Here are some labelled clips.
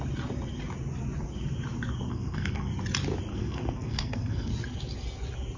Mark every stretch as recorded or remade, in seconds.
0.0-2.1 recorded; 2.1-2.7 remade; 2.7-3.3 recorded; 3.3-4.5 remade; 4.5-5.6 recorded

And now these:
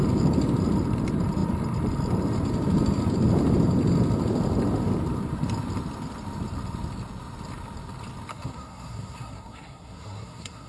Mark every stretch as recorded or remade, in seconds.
0.0-8.3 recorded; 8.3-10.7 remade

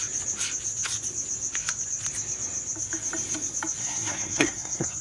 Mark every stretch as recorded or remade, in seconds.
0.0-3.8 recorded; 3.8-5.0 remade